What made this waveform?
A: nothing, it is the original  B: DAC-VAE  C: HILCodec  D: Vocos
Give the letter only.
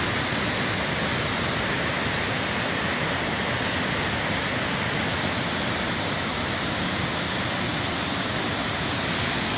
A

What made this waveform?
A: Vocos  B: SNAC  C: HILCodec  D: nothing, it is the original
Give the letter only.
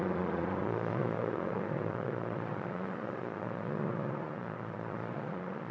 A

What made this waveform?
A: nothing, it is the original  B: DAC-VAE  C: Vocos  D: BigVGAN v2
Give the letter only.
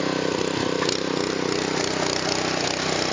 A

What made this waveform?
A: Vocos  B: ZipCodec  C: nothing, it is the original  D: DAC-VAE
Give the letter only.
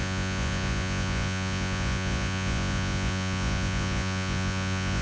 A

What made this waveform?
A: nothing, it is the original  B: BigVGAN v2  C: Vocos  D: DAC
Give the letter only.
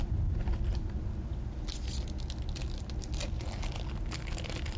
A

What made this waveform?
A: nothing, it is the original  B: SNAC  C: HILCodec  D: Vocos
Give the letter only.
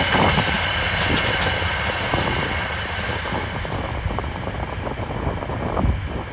A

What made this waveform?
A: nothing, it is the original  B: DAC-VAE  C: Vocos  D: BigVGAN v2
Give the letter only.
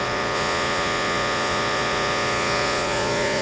C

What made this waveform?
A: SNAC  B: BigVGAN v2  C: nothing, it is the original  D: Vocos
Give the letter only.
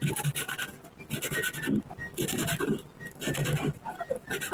C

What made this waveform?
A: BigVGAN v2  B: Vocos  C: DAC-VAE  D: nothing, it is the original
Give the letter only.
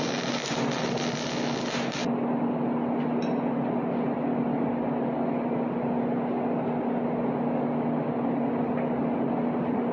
D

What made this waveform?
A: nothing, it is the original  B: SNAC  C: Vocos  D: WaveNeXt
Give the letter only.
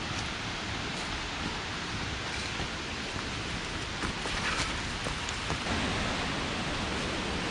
A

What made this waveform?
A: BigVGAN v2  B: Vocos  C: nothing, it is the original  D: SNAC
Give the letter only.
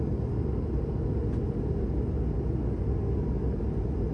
C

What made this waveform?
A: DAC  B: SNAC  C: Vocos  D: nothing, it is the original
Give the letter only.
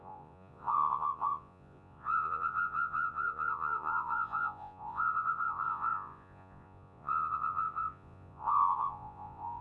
C